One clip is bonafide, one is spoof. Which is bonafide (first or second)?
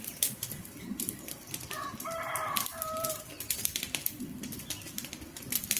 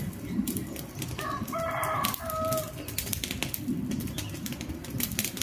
second